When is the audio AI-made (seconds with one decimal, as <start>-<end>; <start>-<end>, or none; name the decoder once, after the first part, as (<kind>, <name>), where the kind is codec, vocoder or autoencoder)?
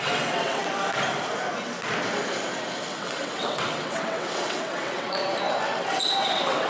0.0-0.6 (vocoder, WaveNeXt); 2.9-5.2; 5.8-6.7